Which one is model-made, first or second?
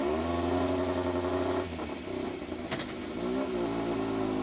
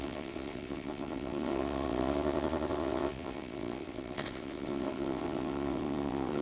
second